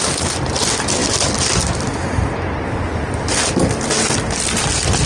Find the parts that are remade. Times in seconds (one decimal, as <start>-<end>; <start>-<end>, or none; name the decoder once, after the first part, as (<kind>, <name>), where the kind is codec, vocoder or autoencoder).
none